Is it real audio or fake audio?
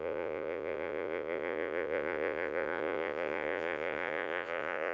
fake